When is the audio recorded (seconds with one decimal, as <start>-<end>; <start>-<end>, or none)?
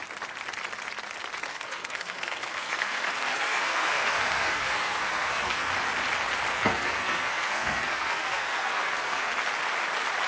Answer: 0.0-1.5; 5.7-6.5; 9.4-10.3